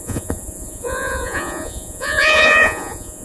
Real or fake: fake